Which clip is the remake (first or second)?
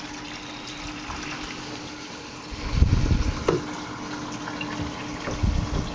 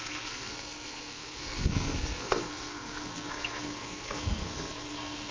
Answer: second